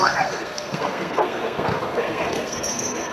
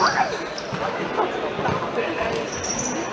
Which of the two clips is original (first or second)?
second